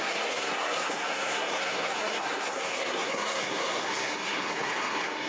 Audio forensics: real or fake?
fake